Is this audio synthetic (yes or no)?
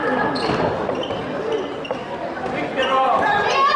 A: no